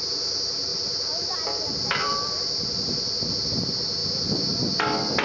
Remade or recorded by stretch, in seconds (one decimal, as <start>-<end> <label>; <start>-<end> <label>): 0.0-0.7 recorded; 0.7-3.5 remade; 3.5-5.2 recorded